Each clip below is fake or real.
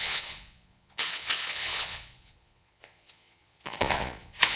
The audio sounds fake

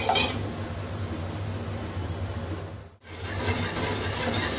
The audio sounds real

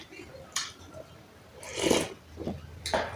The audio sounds real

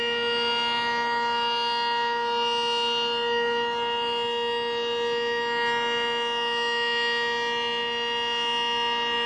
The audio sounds real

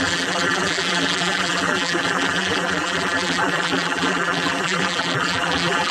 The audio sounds fake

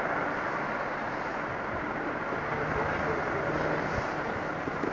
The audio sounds real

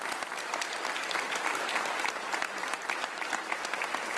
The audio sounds real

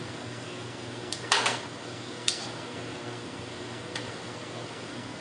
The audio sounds fake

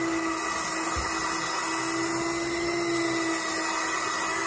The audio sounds real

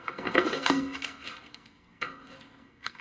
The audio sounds fake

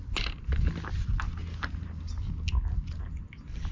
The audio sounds real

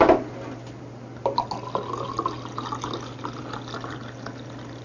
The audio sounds real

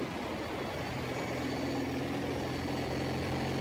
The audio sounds real